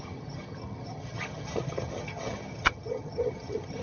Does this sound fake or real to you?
fake